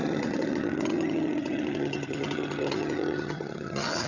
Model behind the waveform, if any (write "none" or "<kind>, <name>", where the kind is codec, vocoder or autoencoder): vocoder, HiFi-GAN